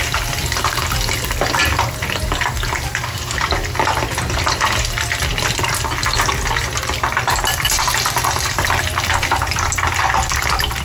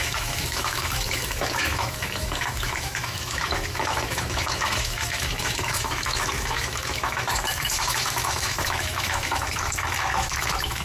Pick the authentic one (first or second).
first